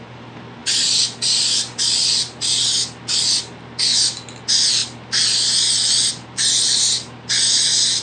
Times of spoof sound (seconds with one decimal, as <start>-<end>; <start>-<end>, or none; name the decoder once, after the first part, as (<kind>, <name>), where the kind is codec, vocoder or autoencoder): none